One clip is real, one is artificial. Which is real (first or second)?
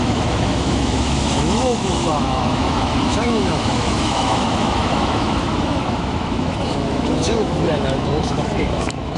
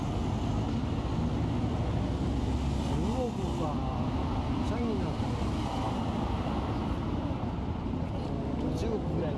second